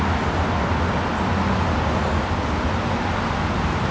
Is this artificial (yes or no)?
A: no